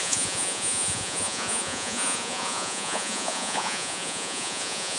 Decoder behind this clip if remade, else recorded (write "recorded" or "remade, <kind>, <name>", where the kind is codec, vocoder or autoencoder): remade, vocoder, Vocos